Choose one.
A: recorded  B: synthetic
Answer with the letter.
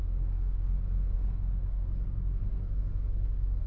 B